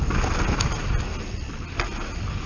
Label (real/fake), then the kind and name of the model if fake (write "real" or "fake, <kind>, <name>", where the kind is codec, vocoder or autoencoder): real